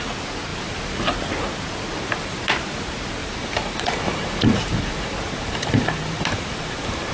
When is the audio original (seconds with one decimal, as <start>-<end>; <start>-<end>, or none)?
0.0-3.2